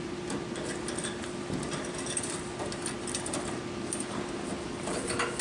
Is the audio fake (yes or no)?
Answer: yes